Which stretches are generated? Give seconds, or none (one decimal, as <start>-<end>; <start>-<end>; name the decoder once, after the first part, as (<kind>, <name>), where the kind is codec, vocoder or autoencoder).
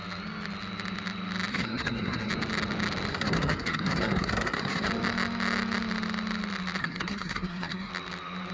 1.5-2.3 (codec, SNAC); 3.1-4.9; 6.8-7.9